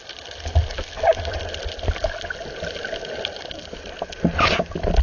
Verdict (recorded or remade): recorded